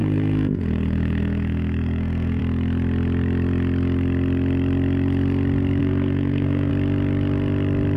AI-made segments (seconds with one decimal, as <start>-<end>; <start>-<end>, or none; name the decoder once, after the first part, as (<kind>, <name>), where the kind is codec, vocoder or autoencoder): 0.0-2.4 (codec, SNAC); 5.8-6.7